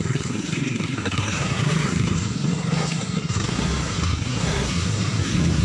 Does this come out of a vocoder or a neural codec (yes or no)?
yes